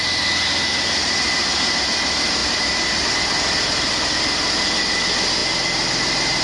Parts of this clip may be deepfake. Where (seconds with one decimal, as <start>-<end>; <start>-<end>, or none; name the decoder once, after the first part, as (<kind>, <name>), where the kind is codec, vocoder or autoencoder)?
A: none